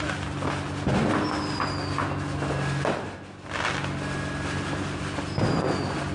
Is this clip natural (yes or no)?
yes